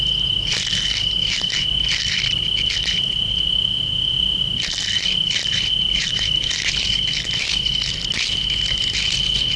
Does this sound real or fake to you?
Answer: real